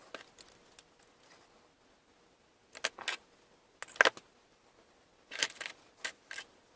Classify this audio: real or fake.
real